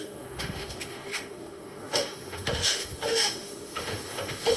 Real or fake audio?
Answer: fake